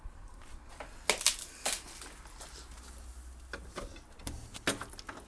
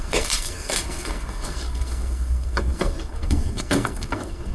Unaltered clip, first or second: first